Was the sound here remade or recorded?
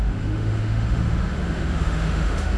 remade